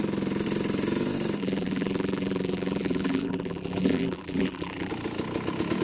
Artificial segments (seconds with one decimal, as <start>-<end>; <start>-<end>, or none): 1.4-4.9